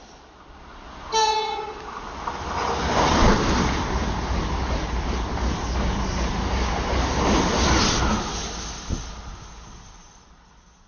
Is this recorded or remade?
recorded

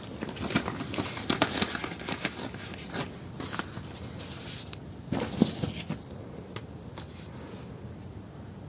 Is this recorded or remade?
recorded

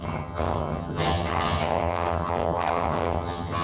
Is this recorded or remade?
remade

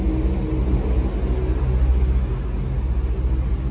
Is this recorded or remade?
recorded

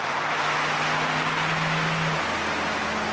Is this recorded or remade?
recorded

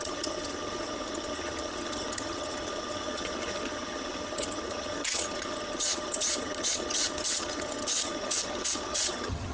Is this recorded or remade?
remade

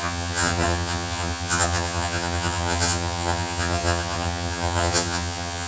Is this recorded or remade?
remade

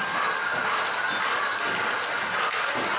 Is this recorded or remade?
recorded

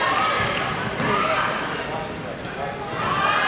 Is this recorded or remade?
recorded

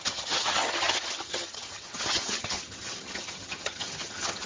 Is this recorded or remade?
remade